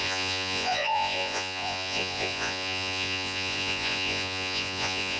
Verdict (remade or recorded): remade